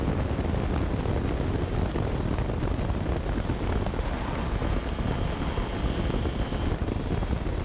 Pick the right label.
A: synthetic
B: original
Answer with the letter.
B